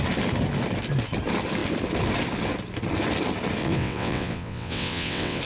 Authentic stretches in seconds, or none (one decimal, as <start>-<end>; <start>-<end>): 0.0-3.6